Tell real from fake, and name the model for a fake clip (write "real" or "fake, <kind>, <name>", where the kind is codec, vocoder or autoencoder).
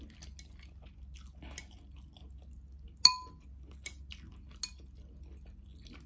real